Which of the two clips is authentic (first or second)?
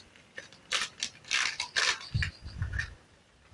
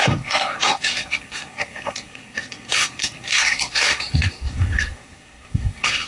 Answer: first